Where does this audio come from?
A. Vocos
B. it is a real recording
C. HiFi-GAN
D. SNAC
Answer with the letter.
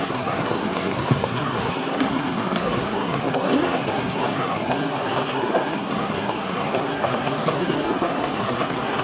D